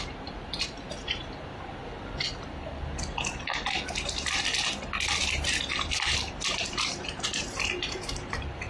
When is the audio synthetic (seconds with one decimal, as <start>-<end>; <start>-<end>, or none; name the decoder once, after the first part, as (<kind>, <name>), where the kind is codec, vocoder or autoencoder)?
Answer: 0.0-1.8 (vocoder, BigVGAN v2); 5.2-8.7